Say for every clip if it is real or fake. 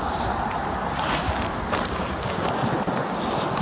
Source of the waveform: real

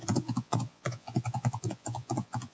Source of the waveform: fake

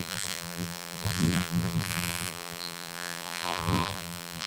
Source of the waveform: fake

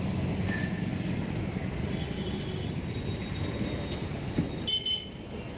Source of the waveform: real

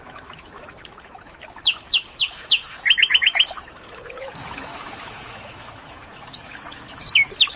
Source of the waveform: fake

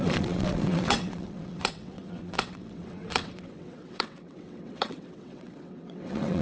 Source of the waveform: fake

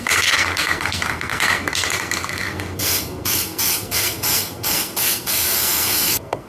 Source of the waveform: fake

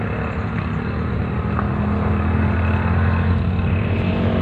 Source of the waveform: real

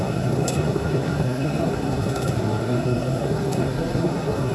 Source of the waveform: fake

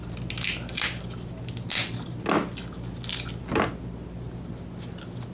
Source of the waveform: real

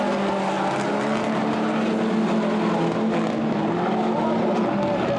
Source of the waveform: real